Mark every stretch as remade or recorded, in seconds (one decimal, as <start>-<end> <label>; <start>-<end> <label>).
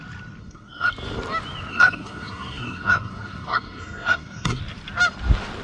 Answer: 0.0-0.4 recorded; 0.4-0.9 remade; 0.9-1.7 recorded; 1.7-4.6 remade; 4.6-5.6 recorded